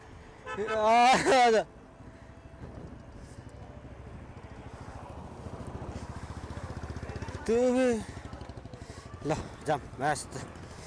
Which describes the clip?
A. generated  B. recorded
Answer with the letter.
B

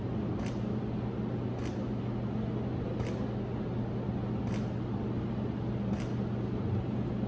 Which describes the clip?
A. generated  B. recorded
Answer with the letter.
B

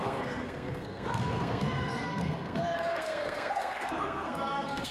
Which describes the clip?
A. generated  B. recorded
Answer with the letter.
A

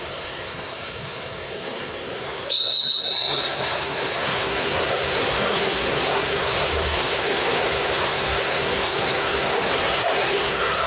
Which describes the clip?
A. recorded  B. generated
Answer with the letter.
B